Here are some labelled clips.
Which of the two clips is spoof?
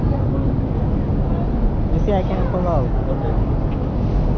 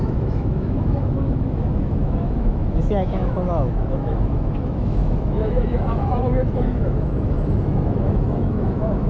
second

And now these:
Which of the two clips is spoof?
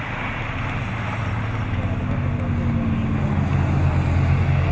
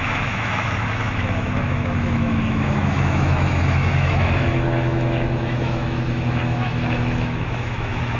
second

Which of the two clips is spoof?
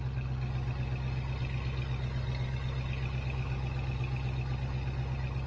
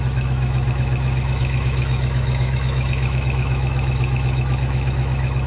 second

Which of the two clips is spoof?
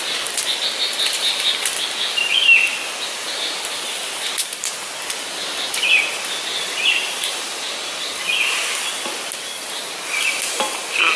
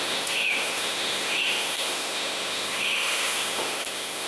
second